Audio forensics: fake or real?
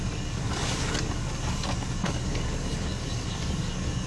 fake